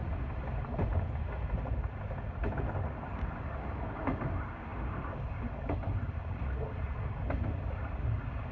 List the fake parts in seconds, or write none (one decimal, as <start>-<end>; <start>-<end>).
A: none